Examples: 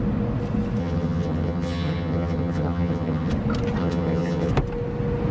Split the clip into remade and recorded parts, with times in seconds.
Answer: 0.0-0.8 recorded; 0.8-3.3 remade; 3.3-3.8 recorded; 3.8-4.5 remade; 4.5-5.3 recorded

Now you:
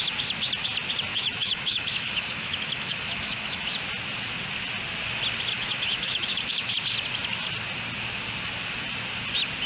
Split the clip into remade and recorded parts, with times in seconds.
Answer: 0.0-1.1 recorded; 1.1-3.6 remade; 3.6-5.5 recorded; 5.5-6.7 remade; 6.7-9.7 recorded

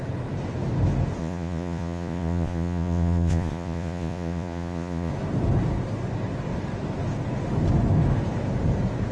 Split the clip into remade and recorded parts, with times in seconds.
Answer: 0.0-1.2 recorded; 1.2-5.1 remade; 5.1-9.1 recorded

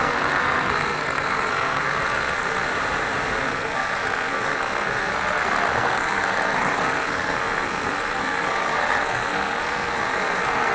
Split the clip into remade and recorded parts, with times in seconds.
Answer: 0.0-2.7 remade; 2.7-3.3 recorded; 3.3-10.7 remade